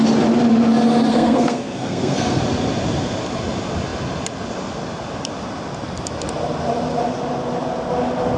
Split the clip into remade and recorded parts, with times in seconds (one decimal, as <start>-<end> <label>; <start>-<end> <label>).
0.0-1.1 recorded; 1.1-2.4 remade; 2.4-8.4 recorded